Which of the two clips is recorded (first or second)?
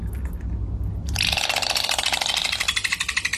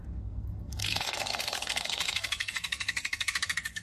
first